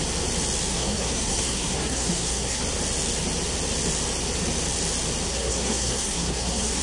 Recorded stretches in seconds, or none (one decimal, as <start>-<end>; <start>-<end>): 0.0-0.7; 2.6-5.3